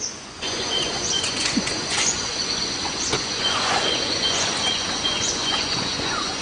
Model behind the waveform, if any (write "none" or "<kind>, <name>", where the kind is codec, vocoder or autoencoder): vocoder, Vocos